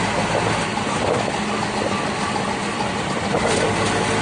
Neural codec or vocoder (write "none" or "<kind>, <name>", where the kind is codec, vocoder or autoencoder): none